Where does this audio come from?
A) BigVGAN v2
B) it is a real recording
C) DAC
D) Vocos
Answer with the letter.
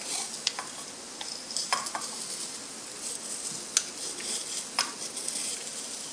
B